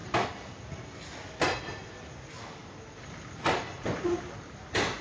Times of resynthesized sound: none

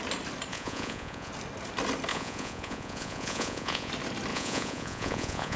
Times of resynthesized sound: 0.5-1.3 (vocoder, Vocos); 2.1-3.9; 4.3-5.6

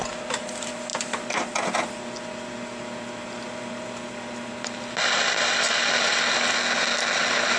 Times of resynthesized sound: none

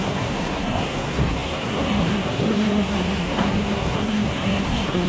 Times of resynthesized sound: 0.0-5.1 (codec, SNAC)